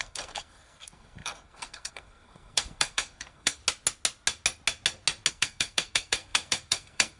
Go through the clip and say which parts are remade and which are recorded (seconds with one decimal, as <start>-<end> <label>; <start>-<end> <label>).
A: 0.0-3.6 remade; 3.6-5.3 recorded; 5.3-7.2 remade